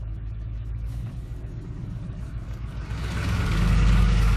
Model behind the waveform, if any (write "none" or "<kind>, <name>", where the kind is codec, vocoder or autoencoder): codec, DAC